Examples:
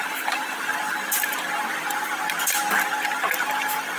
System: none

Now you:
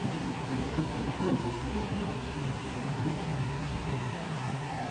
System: codec, SNAC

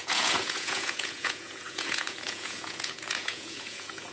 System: vocoder, Vocos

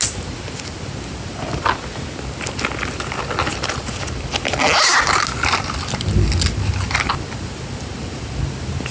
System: none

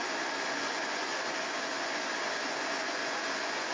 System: vocoder, Vocos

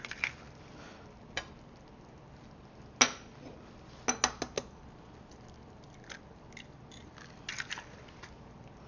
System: none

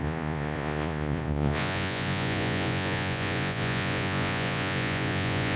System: vocoder, Vocos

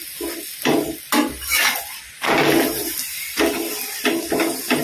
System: none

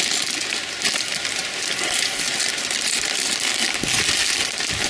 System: none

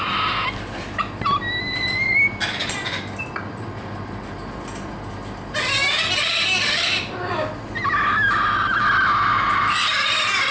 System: none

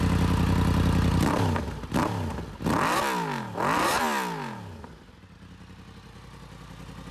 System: none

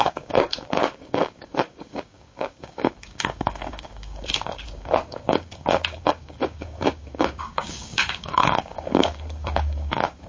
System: codec, DAC